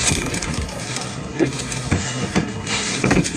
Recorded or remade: remade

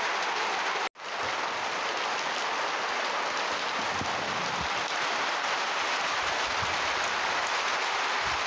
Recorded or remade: recorded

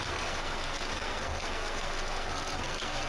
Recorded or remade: remade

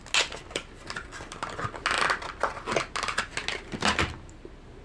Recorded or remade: recorded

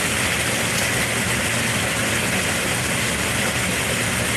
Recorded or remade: recorded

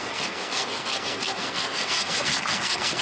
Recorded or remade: remade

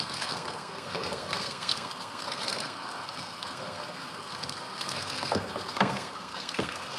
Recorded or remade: remade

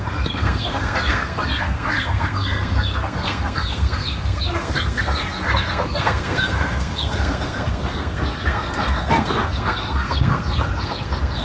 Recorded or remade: remade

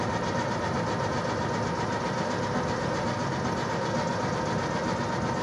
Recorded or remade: recorded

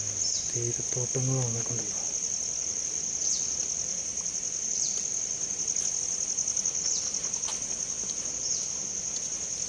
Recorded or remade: recorded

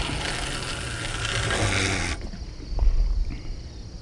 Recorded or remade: recorded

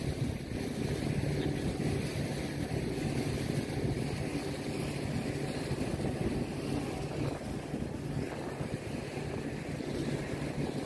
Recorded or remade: recorded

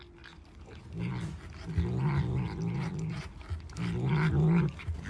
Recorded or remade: recorded